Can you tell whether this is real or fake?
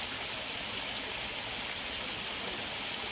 real